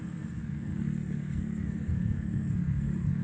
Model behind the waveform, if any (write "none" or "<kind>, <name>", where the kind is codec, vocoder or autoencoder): codec, SNAC